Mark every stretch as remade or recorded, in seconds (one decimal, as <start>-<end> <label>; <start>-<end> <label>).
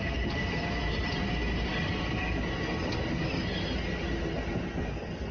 0.0-5.3 recorded